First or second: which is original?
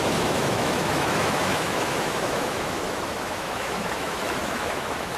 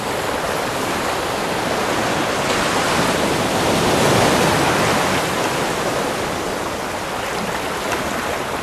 second